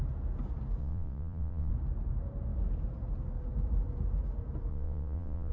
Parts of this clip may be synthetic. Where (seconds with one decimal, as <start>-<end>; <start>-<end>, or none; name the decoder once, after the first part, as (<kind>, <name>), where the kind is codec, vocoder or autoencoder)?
0.8-1.7 (vocoder, WaveNeXt); 4.7-5.5